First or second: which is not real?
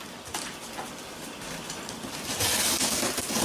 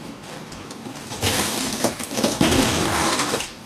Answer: second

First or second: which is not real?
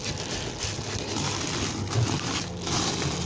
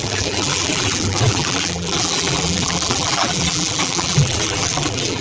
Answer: second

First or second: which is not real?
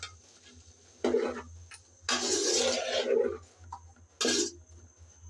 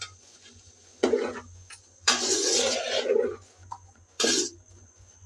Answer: second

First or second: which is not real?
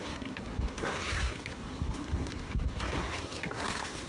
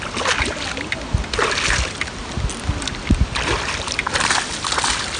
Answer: first